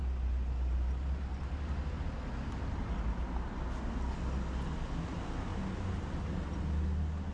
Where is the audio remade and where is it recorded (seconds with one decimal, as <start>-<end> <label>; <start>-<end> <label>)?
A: 0.0-7.3 recorded